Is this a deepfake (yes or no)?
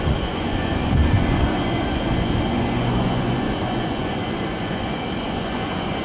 yes